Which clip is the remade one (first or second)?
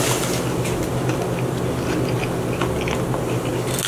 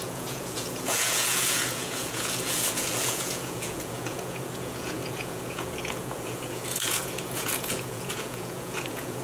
second